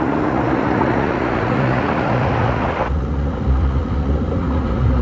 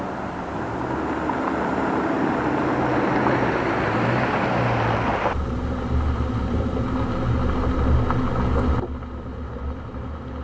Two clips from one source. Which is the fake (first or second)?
first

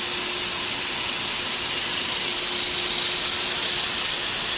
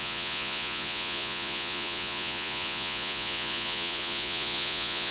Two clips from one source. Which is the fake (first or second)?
second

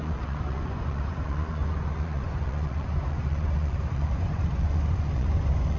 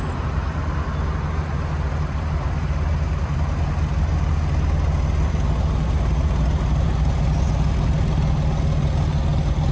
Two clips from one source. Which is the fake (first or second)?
first